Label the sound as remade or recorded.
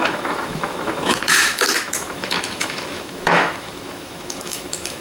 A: remade